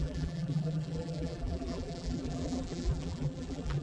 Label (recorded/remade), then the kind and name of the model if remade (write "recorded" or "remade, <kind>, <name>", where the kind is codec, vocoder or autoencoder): remade, vocoder, BigVGAN v2